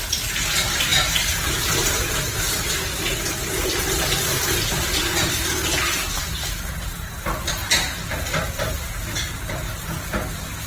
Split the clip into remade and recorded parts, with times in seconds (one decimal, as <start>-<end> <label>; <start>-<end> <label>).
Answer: 0.0-0.9 recorded; 0.9-3.1 remade; 3.1-3.6 recorded; 3.6-7.1 remade; 7.1-7.6 recorded; 7.6-8.9 remade; 8.9-10.7 recorded